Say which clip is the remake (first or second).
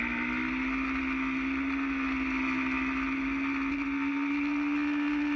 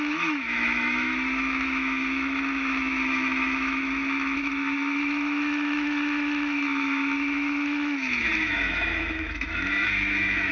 second